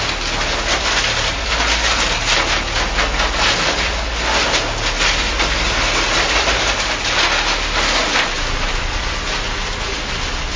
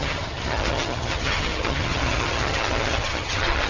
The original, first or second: first